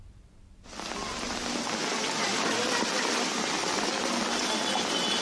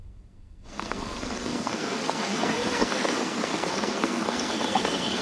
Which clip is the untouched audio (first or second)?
first